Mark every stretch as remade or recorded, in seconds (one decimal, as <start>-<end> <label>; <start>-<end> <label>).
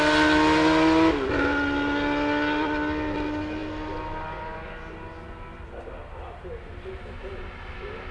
0.0-8.1 recorded